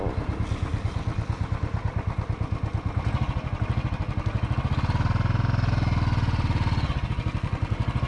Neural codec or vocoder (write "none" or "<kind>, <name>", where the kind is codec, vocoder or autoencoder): none